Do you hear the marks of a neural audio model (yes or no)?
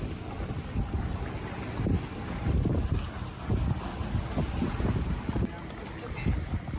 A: no